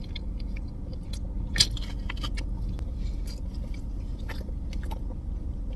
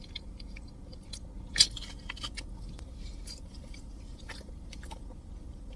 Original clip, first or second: first